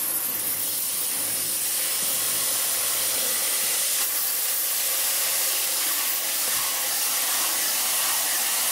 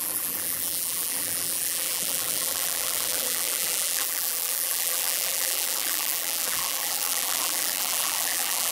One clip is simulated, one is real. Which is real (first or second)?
first